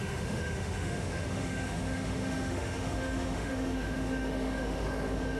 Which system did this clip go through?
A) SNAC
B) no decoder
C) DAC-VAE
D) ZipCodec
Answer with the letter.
C